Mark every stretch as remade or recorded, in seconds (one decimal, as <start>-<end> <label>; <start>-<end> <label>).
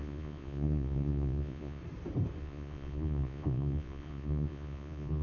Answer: 0.0-1.8 remade; 1.8-2.4 recorded; 2.4-5.2 remade